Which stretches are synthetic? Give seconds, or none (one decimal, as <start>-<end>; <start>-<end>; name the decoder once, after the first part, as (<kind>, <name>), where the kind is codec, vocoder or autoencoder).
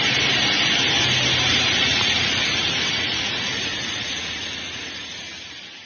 1.8-5.3 (vocoder, Vocos)